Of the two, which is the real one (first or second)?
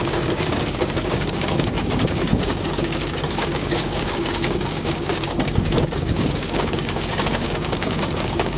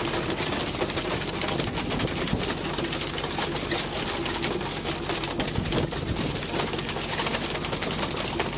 second